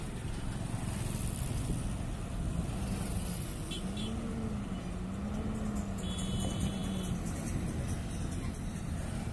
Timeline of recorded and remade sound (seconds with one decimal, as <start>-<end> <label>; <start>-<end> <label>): 0.0-9.3 recorded